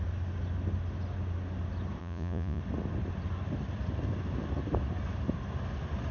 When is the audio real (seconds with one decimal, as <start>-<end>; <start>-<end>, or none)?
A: 0.0-2.0; 2.6-6.1